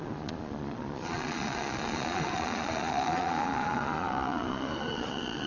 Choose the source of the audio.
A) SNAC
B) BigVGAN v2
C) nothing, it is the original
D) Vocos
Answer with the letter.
D